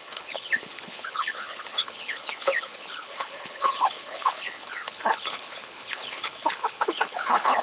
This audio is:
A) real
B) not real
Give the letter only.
B